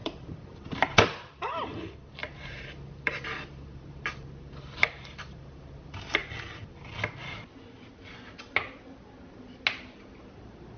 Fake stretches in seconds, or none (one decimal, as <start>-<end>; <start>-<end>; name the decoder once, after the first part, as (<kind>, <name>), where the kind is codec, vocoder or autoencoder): 0.0-6.2 (vocoder, BigVGAN v2); 10.2-10.8